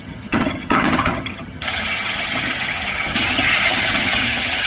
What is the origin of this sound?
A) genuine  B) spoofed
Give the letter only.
B